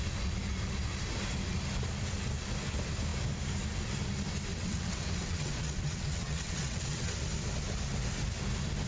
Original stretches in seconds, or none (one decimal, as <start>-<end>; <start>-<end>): 0.0-4.5; 7.2-8.9